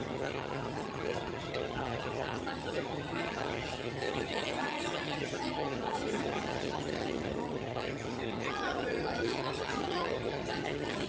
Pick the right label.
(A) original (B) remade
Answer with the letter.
B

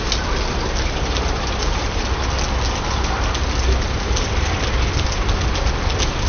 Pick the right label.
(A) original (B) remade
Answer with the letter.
A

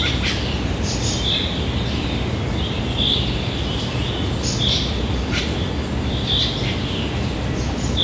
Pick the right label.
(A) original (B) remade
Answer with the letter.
A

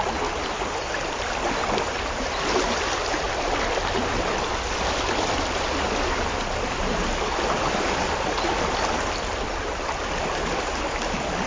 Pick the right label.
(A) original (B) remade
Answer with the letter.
A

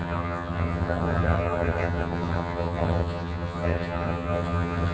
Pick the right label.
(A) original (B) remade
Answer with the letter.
B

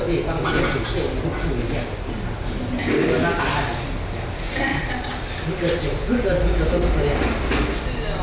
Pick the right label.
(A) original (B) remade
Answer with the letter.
A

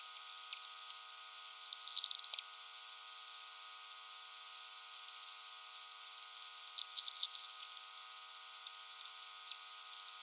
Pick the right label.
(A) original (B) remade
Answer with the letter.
A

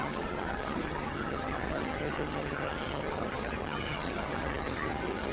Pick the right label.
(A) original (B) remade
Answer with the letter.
B